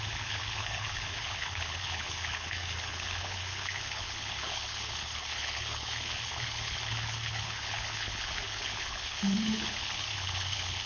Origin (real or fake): fake